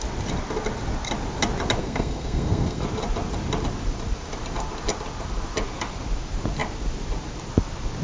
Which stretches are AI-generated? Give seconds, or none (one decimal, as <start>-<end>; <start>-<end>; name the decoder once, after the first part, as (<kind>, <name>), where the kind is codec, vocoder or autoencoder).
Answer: 1.8-2.8 (codec, SNAC)